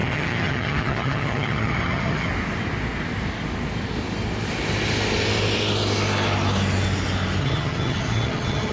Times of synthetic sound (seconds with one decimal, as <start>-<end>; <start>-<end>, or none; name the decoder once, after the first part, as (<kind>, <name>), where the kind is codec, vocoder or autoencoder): 0.0-2.3 (vocoder, HiFi-GAN); 7.4-8.7